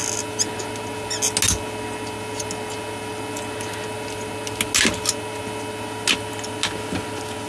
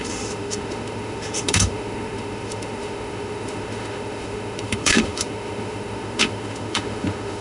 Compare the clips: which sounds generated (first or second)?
second